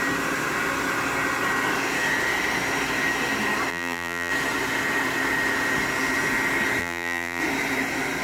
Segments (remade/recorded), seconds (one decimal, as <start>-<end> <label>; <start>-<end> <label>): 0.0-3.7 recorded; 3.7-4.3 remade; 4.3-6.8 recorded; 6.8-7.4 remade; 7.4-8.2 recorded